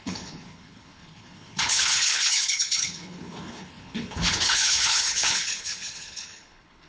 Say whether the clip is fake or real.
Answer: fake